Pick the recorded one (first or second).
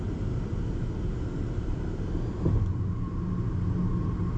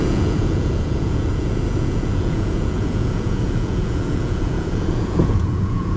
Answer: first